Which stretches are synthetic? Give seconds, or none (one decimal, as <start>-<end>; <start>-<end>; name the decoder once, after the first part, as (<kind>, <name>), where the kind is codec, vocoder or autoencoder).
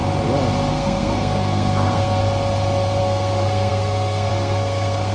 0.7-2.2 (codec, SNAC); 3.0-5.1